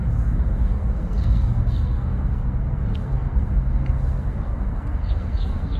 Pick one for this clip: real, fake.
fake